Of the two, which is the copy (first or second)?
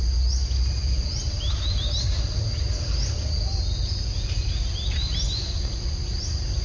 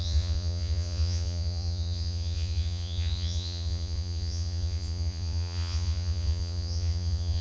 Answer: second